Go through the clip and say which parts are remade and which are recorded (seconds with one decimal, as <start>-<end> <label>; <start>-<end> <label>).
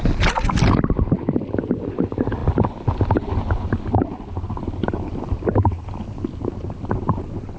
0.0-7.6 recorded